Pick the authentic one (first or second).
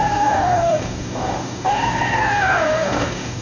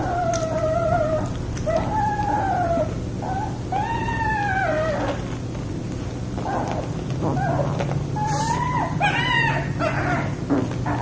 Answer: second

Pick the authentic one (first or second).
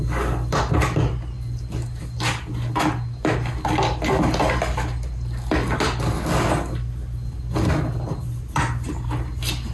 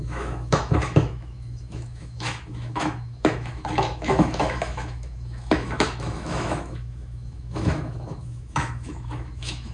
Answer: first